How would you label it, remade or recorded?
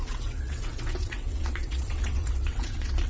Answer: remade